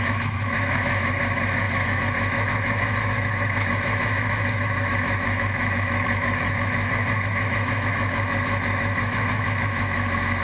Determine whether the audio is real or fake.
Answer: fake